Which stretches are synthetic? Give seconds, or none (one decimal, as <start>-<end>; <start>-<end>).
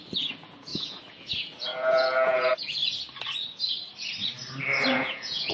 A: 0.0-2.8; 4.9-5.5